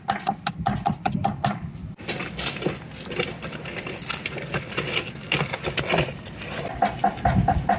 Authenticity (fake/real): real